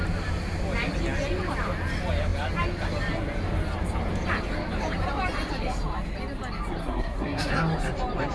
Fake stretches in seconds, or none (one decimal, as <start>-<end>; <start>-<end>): 6.8-7.5